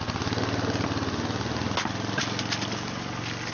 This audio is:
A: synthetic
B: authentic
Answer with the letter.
B